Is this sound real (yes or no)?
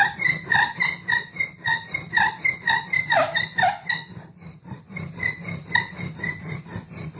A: yes